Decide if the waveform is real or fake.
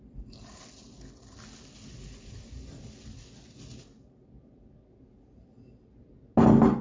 real